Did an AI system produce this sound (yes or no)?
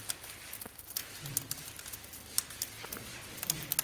no